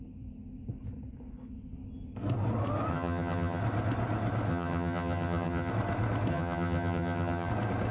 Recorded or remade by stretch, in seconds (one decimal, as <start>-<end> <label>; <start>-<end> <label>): 0.0-2.9 recorded; 2.9-3.6 remade; 3.6-4.5 recorded; 4.5-5.7 remade; 5.7-6.3 recorded; 6.3-7.5 remade; 7.5-7.9 recorded